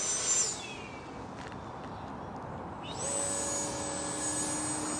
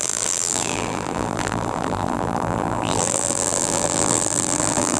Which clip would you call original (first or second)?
first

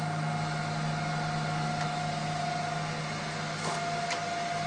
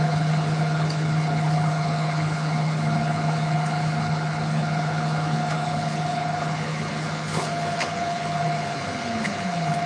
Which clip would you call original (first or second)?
first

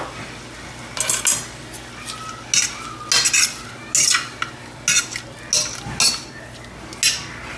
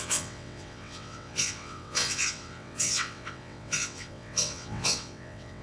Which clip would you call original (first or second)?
first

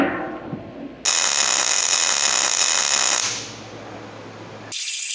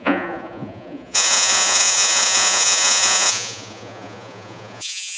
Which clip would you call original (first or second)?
first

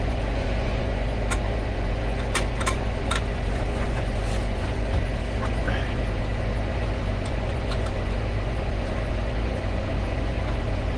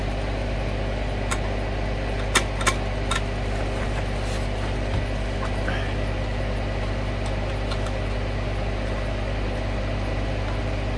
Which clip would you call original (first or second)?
second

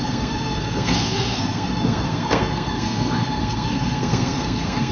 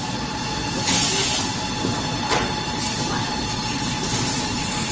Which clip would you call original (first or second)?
second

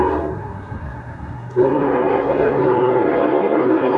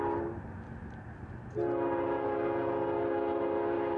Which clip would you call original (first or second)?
second